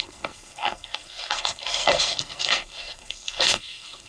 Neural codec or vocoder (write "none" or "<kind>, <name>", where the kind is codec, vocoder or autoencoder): codec, SNAC